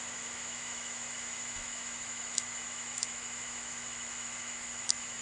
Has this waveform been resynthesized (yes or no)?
yes